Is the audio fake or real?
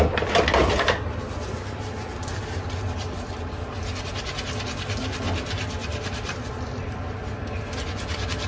real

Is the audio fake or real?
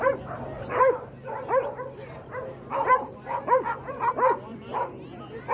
fake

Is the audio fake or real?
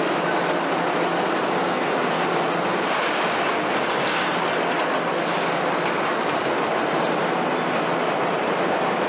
real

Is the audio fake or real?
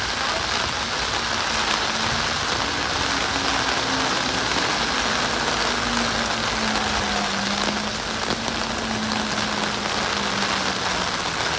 real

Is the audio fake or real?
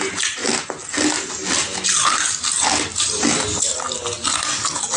real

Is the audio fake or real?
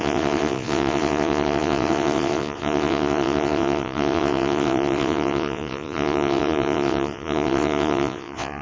fake